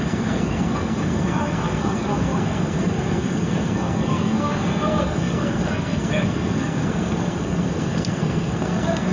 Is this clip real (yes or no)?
no